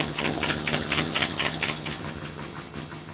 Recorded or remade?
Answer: remade